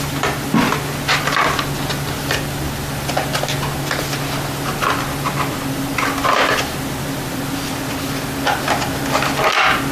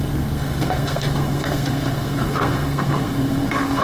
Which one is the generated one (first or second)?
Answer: second